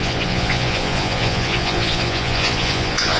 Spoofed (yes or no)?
yes